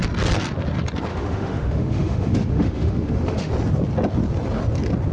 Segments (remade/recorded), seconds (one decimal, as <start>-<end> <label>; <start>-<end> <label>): 0.0-1.1 recorded; 1.1-3.5 remade; 3.5-5.1 recorded